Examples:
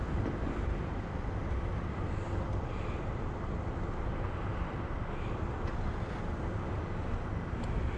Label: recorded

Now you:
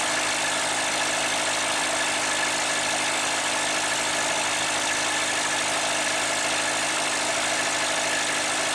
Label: recorded